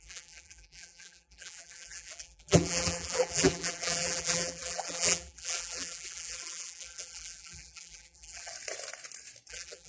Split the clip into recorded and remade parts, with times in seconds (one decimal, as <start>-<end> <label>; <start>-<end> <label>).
0.0-8.5 remade; 8.5-9.5 recorded; 9.5-9.9 remade